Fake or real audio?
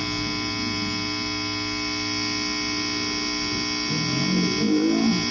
real